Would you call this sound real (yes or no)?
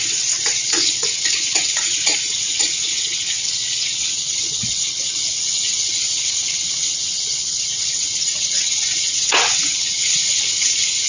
no